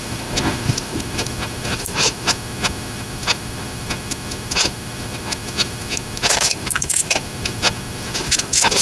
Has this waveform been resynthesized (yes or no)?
yes